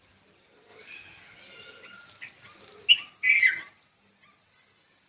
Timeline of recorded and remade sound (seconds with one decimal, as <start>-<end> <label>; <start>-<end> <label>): 0.0-5.1 recorded